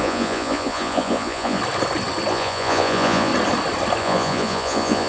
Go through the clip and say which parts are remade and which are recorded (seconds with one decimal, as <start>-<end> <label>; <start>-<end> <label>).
0.0-1.6 remade; 1.6-2.3 recorded; 2.3-3.3 remade; 3.3-4.0 recorded; 4.0-5.1 remade